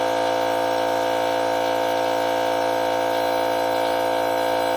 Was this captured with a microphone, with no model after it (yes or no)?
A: yes